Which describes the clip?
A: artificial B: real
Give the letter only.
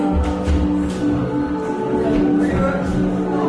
B